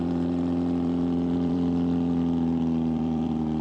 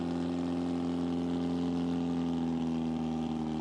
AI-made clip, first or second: first